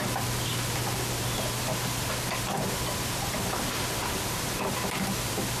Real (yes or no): yes